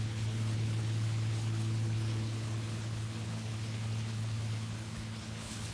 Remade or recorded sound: remade